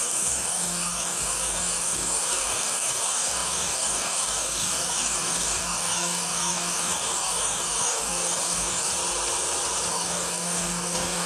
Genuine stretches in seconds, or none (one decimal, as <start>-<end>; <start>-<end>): 8.9-9.9